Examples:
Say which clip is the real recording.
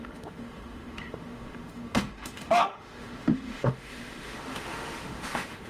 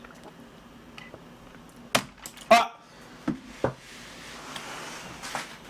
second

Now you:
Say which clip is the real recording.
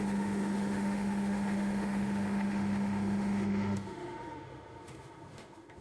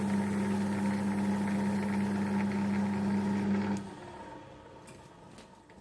second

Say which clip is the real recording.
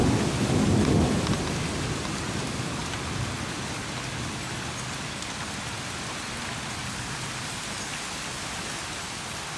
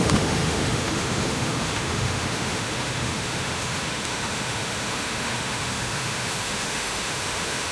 first